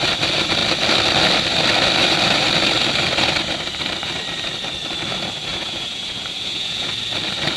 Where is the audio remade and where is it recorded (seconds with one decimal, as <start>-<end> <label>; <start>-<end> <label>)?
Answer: 0.0-5.5 recorded; 5.5-6.9 remade; 6.9-7.6 recorded

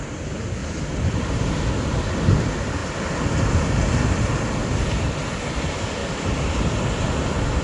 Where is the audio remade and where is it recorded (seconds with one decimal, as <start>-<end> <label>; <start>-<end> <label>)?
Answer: 0.0-0.6 recorded; 0.6-1.7 remade; 1.7-2.8 recorded; 2.8-5.4 remade; 5.4-6.0 recorded; 6.0-6.8 remade; 6.8-7.6 recorded

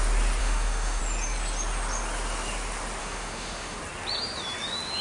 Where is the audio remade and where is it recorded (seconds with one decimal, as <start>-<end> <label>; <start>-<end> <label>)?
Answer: 0.0-0.4 recorded; 0.4-1.0 remade; 1.0-3.0 recorded; 3.0-3.8 remade; 3.8-5.0 recorded

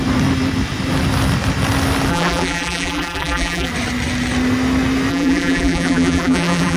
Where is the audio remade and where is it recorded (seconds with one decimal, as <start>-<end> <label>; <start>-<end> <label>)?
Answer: 0.0-2.1 recorded; 2.1-3.7 remade; 3.7-5.1 recorded; 5.1-6.8 remade

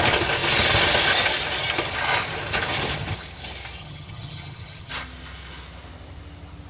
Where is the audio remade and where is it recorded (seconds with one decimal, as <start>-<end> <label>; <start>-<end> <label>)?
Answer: 0.0-3.8 recorded; 3.8-4.9 remade; 4.9-6.7 recorded

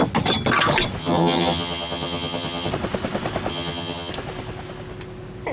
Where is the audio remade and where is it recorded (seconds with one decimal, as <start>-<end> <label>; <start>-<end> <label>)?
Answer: 0.0-1.0 recorded; 1.0-2.7 remade; 2.7-3.5 recorded; 3.5-4.1 remade; 4.1-5.5 recorded

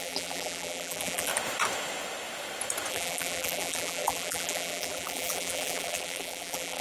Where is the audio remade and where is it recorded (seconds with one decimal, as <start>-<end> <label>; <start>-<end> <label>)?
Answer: 0.0-1.3 remade; 1.3-2.9 recorded; 2.9-6.8 remade

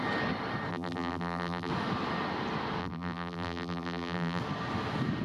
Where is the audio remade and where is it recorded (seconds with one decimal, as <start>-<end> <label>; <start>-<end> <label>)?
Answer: 0.0-0.7 recorded; 0.7-1.7 remade; 1.7-2.8 recorded; 2.8-4.4 remade; 4.4-5.2 recorded